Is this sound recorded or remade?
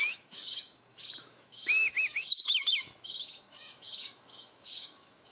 remade